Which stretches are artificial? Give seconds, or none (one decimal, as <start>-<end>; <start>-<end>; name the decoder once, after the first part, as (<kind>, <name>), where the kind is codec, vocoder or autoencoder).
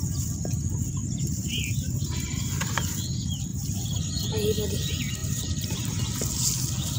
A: 1.0-2.5 (vocoder, BigVGAN v2); 3.5-4.1; 5.2-6.0